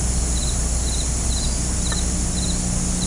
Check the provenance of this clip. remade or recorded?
recorded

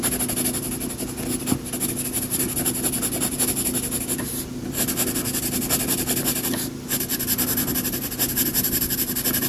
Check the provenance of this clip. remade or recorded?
recorded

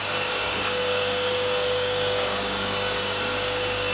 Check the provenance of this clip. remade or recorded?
remade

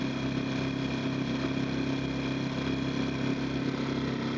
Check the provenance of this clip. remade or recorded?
recorded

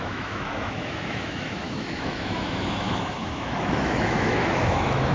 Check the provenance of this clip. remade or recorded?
remade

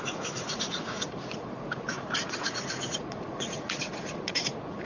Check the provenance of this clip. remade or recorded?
remade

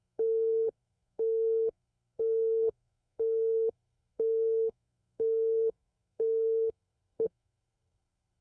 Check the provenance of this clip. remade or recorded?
remade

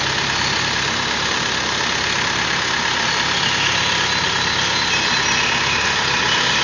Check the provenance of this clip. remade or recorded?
recorded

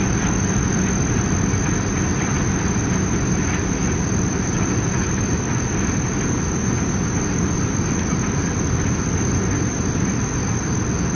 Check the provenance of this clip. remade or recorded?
recorded